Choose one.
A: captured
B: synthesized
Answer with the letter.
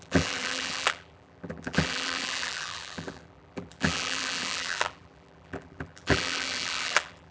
B